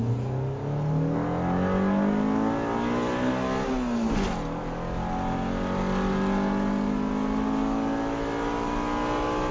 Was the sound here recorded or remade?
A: recorded